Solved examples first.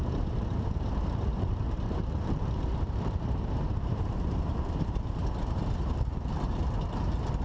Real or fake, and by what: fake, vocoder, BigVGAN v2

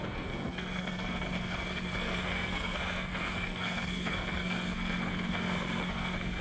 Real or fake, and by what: fake, codec, SNAC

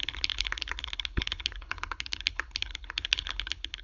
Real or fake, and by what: fake, codec, HILCodec